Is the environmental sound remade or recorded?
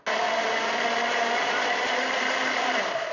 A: recorded